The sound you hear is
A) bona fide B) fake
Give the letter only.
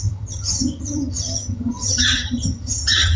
B